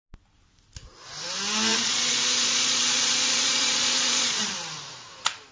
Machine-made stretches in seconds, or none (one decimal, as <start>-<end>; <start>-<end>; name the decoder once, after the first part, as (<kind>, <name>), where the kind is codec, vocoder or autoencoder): 1.7-4.5 (vocoder, Vocos)